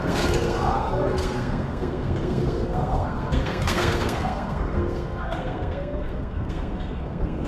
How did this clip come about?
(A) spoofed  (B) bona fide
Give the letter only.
A